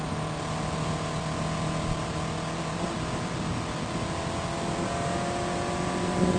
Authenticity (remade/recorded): recorded